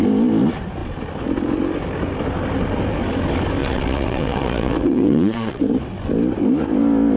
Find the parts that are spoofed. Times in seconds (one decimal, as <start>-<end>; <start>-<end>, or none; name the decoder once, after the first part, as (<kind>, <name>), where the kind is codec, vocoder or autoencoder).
3.6-5.6 (vocoder, WaveNeXt)